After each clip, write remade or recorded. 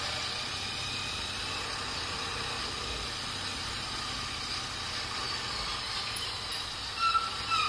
recorded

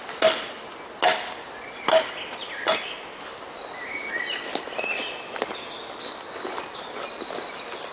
recorded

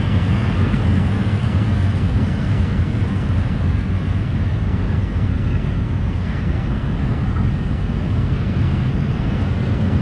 remade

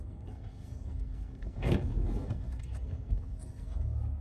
remade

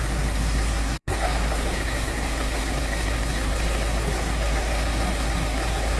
remade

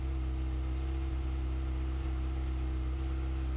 recorded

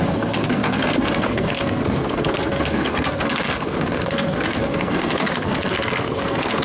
remade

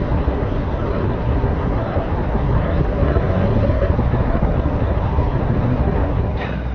remade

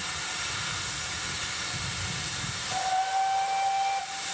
recorded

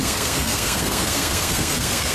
remade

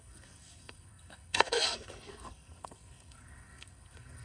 remade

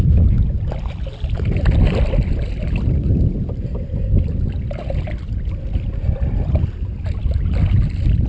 recorded